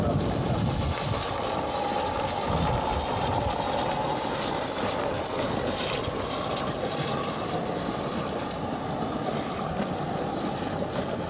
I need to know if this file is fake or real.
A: fake